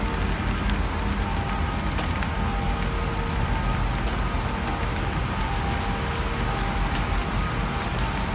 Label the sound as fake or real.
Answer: real